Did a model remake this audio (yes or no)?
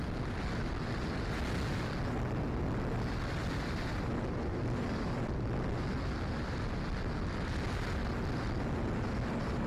no